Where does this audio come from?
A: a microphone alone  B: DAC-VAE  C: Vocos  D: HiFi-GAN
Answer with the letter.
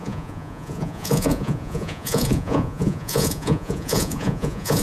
C